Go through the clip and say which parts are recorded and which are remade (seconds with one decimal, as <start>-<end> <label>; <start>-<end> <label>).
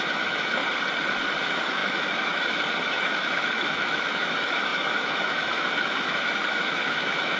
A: 0.0-0.6 remade; 0.6-1.4 recorded; 1.4-7.4 remade